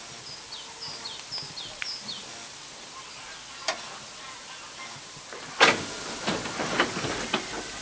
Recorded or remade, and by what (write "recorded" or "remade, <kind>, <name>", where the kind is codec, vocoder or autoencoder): recorded